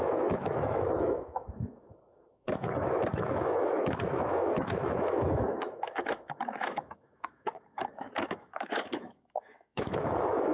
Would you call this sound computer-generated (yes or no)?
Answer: yes